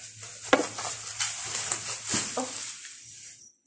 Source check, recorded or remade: recorded